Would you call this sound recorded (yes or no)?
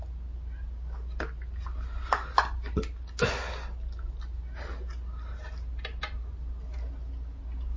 yes